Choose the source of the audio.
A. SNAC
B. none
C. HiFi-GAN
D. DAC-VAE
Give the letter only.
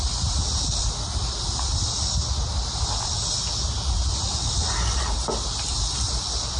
B